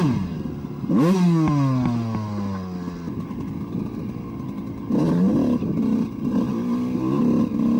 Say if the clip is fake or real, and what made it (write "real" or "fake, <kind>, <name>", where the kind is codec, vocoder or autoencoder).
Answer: real